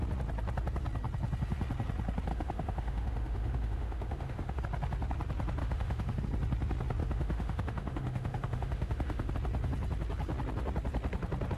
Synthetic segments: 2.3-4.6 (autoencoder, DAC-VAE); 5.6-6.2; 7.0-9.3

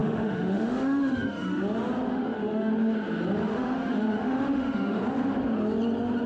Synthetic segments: 0.0-1.6 (autoencoder, DAC-VAE); 2.1-2.7; 3.5-5.0